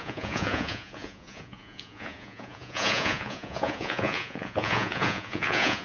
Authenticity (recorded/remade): remade